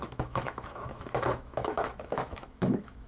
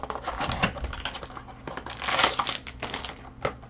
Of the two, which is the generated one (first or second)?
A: first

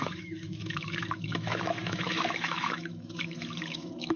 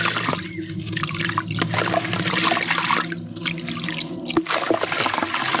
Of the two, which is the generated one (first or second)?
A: first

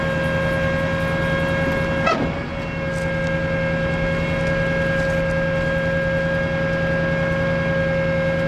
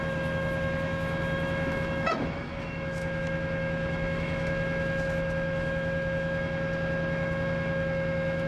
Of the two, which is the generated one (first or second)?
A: second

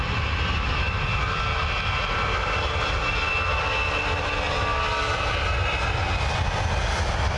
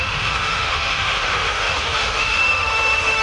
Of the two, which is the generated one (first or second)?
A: second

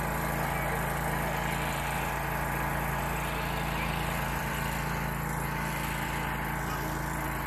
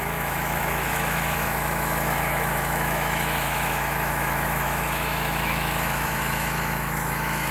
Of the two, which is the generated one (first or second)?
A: second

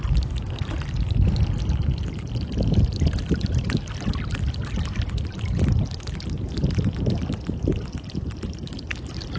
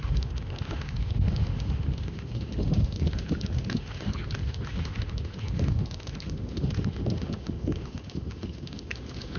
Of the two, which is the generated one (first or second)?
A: second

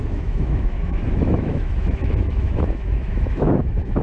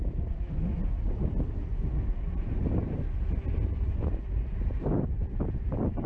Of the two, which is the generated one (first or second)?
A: first